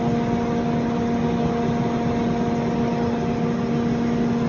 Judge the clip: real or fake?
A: real